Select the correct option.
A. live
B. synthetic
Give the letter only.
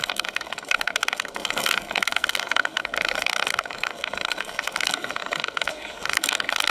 B